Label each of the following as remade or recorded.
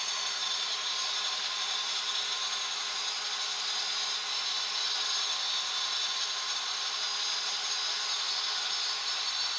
recorded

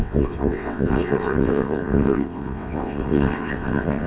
remade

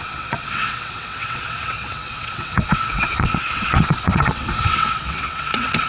remade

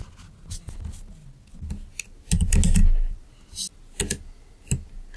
recorded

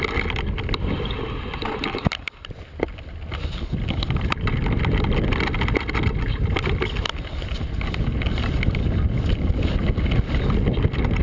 recorded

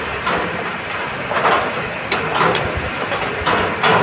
recorded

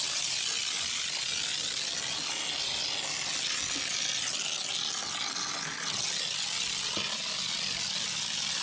recorded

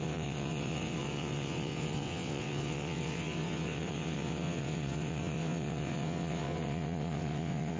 remade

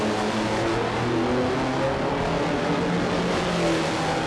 recorded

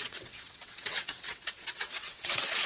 remade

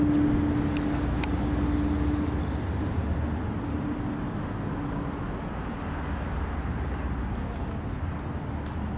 recorded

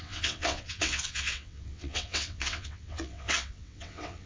remade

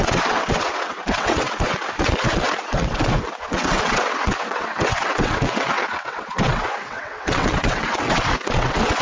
remade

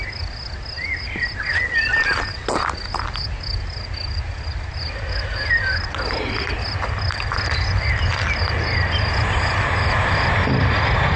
recorded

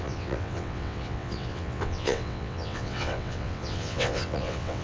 remade